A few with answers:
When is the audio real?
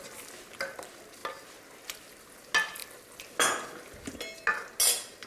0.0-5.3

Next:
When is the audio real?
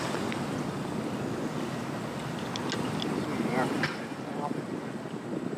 0.0-3.3; 4.6-5.6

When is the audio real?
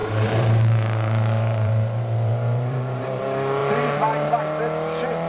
3.2-3.6; 4.4-5.3